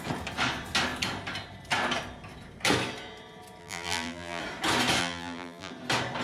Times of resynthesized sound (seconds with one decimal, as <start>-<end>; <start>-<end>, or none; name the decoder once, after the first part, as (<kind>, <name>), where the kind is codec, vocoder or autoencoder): 3.6-4.4 (vocoder, BigVGAN v2); 5.0-5.7